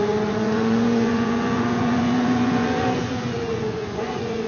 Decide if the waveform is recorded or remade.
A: remade